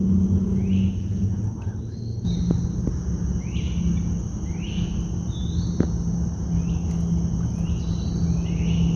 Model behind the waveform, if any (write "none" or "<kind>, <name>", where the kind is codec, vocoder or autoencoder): none